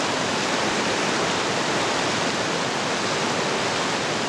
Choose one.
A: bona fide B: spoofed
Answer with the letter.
A